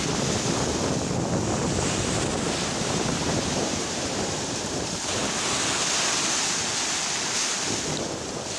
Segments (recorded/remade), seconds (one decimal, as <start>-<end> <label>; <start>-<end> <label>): 0.0-2.3 recorded; 2.3-5.2 remade; 5.2-8.6 recorded